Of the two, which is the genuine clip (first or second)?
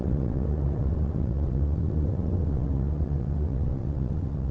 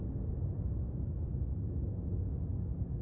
second